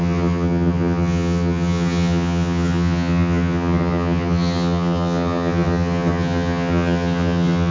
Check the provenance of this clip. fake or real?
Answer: fake